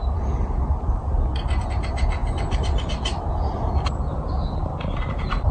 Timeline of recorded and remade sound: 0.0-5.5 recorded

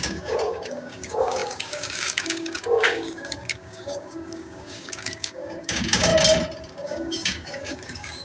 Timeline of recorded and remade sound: 0.0-6.1 remade; 6.1-6.7 recorded; 6.7-8.2 remade

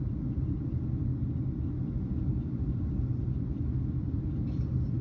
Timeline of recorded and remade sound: 0.0-5.0 recorded

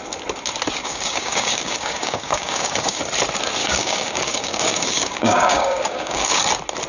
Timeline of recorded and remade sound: 0.0-0.8 recorded; 0.8-3.0 remade; 3.0-3.6 recorded; 3.6-6.4 remade; 6.4-6.9 recorded